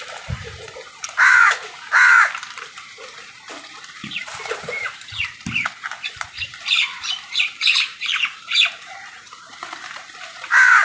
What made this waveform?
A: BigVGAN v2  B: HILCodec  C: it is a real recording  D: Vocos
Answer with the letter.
A